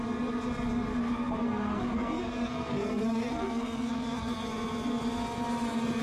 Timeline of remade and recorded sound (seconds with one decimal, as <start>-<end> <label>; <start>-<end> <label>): 0.0-0.9 recorded; 0.9-4.5 remade; 4.5-6.0 recorded